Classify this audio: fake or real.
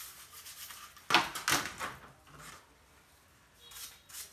real